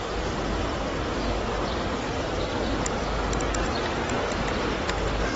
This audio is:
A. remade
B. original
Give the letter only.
B